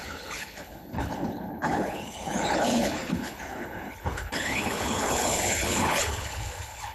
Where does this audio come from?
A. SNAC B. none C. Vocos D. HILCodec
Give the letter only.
D